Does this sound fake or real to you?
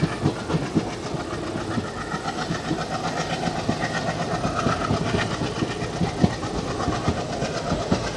real